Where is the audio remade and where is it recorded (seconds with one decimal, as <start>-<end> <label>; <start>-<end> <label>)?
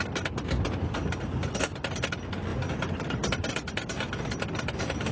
0.0-2.5 recorded; 2.5-3.5 remade; 3.5-5.1 recorded